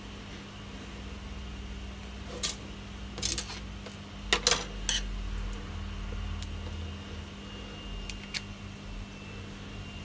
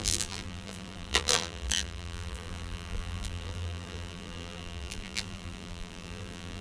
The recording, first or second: first